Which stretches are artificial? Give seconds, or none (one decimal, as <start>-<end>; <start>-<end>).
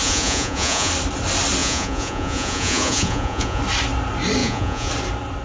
0.0-0.9; 1.6-3.6; 4.4-4.9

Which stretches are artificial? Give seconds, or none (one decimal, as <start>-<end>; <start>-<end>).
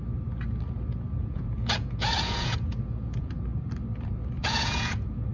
1.2-3.3; 4.4-5.3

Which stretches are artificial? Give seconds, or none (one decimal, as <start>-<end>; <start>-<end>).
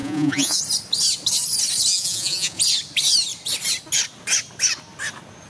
0.0-0.6; 1.9-2.6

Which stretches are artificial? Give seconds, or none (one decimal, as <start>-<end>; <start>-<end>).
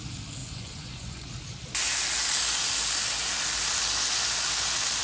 0.4-1.3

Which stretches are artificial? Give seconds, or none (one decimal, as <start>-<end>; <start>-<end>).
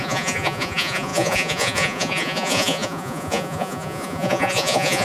0.0-5.0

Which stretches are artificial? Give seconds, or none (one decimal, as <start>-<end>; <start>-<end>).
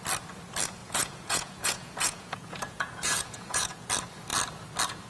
0.8-3.9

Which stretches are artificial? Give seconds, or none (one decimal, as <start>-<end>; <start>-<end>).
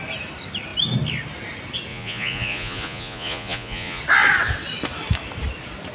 1.9-4.0